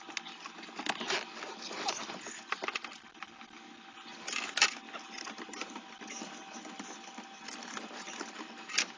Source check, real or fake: real